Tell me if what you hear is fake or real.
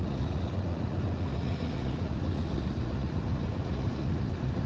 fake